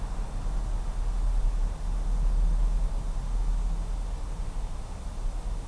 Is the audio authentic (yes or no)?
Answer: yes